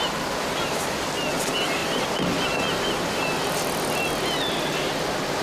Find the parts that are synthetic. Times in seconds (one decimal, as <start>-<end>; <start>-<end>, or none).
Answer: none